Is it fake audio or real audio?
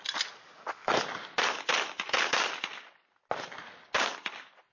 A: real